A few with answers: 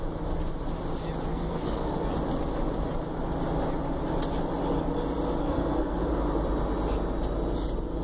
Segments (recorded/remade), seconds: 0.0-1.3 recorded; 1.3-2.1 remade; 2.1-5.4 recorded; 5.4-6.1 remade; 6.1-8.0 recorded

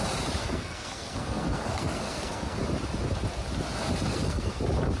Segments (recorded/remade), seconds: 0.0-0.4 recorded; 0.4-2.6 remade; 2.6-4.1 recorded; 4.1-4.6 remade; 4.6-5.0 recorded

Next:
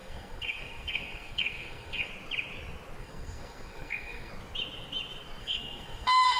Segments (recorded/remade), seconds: 0.0-2.1 remade; 2.1-3.0 recorded; 3.0-4.3 remade; 4.3-5.4 recorded; 5.4-6.4 remade